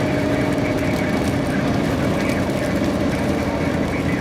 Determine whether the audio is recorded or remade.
recorded